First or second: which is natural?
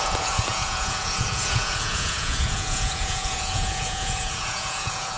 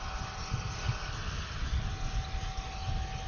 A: second